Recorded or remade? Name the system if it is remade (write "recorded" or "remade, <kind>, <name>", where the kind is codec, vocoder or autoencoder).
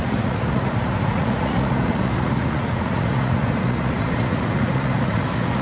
remade, vocoder, Vocos